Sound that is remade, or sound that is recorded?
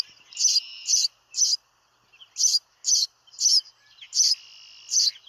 remade